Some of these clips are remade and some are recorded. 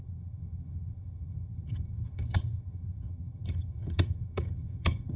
remade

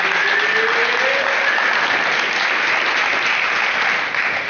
recorded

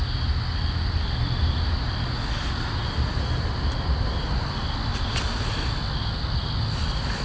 recorded